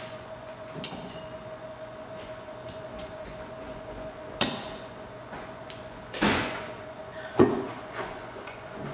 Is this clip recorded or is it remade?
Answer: remade